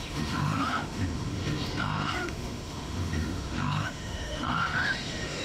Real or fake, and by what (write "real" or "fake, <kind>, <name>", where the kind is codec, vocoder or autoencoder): fake, autoencoder, DAC-VAE